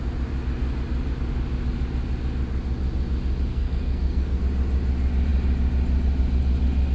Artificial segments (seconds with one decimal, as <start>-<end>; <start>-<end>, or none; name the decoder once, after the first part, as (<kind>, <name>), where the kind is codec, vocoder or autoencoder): 3.5-4.4 (codec, SNAC)